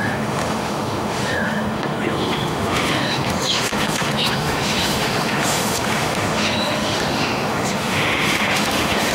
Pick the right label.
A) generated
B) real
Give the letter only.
A